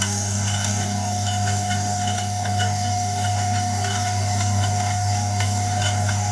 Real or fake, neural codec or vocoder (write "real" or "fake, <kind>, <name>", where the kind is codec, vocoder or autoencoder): fake, codec, DAC